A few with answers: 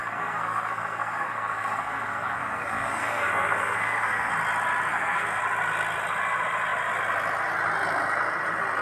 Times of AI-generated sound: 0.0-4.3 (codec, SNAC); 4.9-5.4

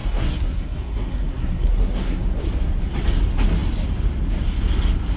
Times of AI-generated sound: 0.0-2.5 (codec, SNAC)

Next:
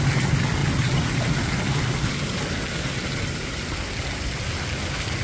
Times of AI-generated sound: none

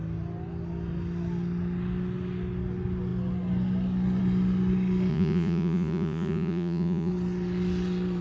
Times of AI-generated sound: 5.1-7.1 (vocoder, Vocos)

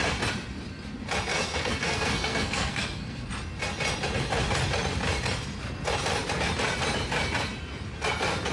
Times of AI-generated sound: 1.3-3.3 (codec, SNAC)